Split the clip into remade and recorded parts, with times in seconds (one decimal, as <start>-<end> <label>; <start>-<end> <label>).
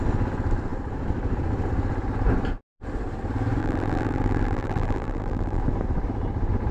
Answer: 0.0-3.6 recorded; 3.6-5.6 remade; 5.6-6.7 recorded